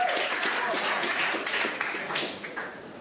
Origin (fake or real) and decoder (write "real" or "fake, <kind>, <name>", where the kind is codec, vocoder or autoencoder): fake, vocoder, Vocos